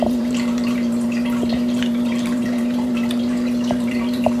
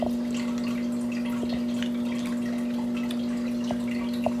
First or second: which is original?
second